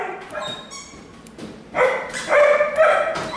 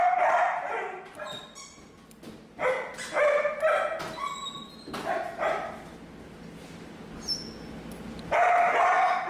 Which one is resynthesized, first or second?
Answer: first